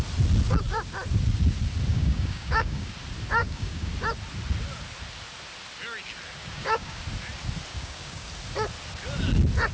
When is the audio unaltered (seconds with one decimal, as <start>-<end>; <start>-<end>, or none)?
0.0-1.9; 2.9-3.4; 3.9-6.4; 7.0-7.7; 8.3-9.7